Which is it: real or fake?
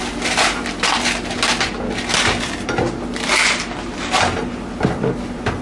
real